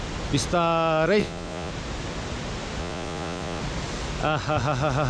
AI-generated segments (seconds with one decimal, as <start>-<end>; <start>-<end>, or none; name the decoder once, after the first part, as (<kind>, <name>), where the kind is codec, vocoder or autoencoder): 1.2-1.7 (vocoder, Vocos); 2.8-3.6